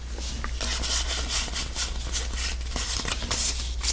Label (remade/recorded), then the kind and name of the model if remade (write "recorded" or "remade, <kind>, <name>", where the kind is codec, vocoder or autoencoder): recorded